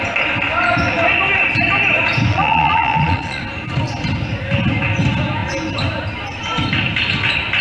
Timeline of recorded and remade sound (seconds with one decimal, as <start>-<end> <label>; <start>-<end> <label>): 0.0-2.3 recorded; 2.3-3.4 remade; 3.4-7.6 recorded